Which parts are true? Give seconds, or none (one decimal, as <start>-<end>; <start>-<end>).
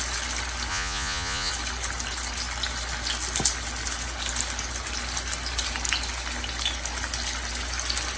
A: 0.0-0.7; 1.5-8.2